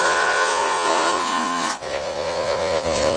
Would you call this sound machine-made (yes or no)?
yes